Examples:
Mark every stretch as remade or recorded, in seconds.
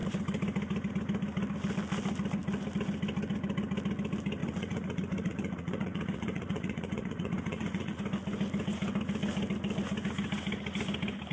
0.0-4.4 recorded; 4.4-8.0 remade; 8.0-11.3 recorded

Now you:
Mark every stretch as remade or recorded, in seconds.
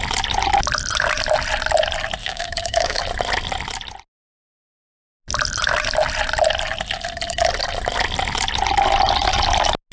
0.0-2.2 recorded; 2.2-3.0 remade; 3.0-9.9 recorded